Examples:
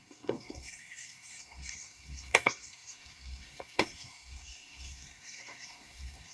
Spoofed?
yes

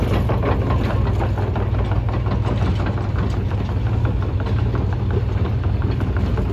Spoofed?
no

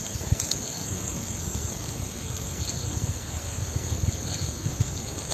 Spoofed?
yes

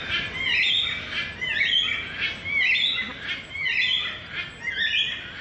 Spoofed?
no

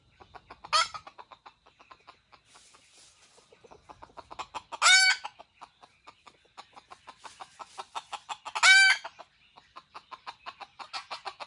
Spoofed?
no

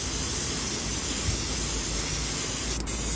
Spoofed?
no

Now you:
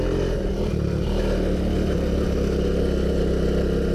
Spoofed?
no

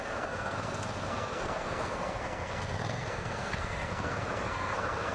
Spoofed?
yes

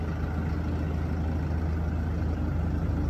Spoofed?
no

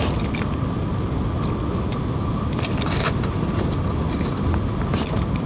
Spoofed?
no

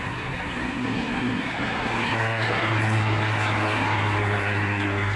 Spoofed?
yes